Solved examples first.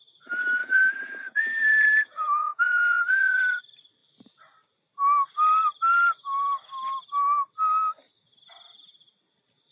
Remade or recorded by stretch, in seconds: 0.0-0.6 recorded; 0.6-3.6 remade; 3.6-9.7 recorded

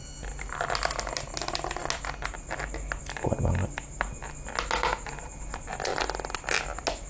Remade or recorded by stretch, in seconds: 0.0-7.1 recorded

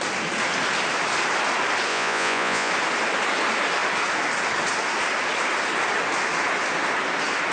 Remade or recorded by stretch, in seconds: 0.0-1.9 recorded; 1.9-2.7 remade; 2.7-7.5 recorded

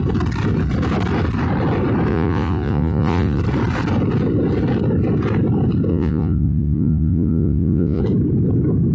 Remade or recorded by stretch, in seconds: 0.0-2.1 recorded; 2.1-3.4 remade; 3.4-5.9 recorded; 5.9-8.0 remade; 8.0-8.9 recorded

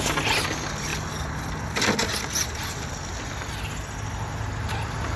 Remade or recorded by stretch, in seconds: 0.0-5.2 recorded

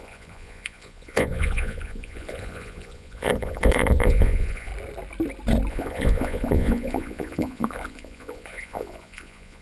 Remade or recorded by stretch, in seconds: 0.0-4.7 remade; 4.7-5.7 recorded; 5.7-9.6 remade

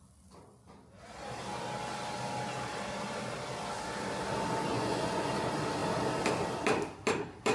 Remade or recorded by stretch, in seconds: 0.0-4.7 recorded; 4.7-5.3 remade; 5.3-7.5 recorded